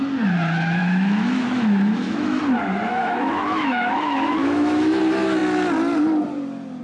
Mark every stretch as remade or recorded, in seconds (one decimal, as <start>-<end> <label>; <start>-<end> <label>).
0.0-0.8 recorded; 0.8-2.4 remade; 2.4-2.9 recorded; 2.9-5.0 remade; 5.0-6.8 recorded